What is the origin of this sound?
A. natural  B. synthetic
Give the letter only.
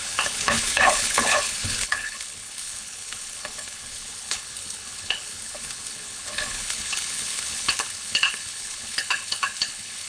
B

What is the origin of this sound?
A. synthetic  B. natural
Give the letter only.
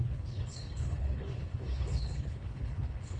A